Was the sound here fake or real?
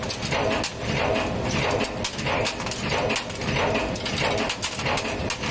real